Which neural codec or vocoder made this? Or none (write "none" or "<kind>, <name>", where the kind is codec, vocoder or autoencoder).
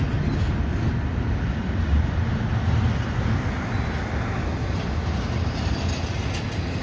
none